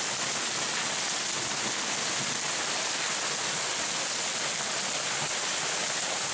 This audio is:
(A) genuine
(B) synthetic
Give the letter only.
A